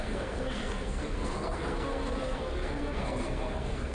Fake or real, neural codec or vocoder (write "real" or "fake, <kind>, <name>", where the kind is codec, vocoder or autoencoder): fake, codec, SNAC